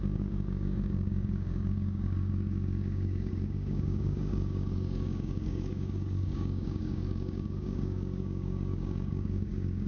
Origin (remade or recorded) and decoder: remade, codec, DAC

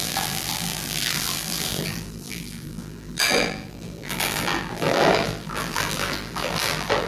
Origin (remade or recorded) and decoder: remade, vocoder, BigVGAN v2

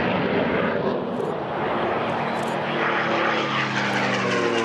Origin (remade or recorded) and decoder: recorded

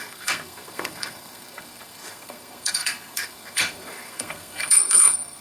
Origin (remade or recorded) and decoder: remade, codec, SNAC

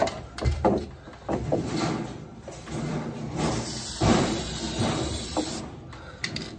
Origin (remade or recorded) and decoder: recorded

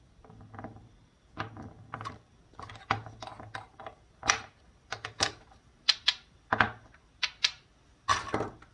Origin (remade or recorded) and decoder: recorded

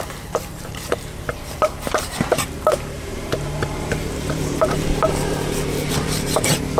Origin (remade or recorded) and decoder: remade, vocoder, BigVGAN v2